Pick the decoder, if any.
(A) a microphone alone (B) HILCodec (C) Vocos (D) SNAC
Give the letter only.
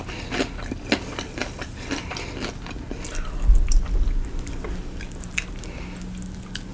A